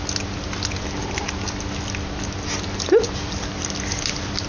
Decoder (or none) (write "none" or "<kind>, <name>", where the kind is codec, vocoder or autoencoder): none